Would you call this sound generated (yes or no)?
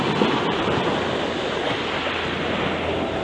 no